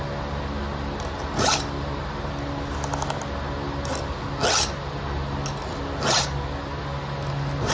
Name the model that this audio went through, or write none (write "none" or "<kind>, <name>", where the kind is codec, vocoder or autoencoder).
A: none